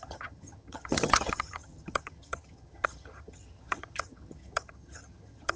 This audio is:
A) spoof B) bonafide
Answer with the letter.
A